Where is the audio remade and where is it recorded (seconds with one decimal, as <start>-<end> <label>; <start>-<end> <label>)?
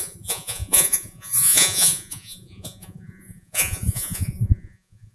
0.0-5.1 remade